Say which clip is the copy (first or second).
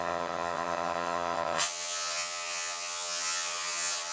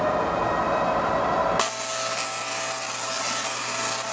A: first